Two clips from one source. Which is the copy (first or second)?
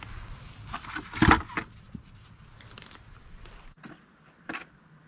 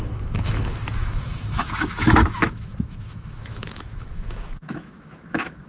second